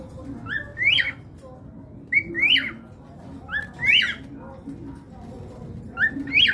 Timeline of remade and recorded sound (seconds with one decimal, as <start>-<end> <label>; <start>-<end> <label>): 0.0-6.5 recorded